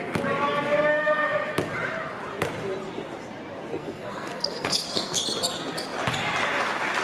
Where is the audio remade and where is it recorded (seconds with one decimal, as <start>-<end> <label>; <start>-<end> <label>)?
0.0-0.9 recorded; 0.9-1.5 remade; 1.5-3.8 recorded; 3.8-5.2 remade; 5.2-7.0 recorded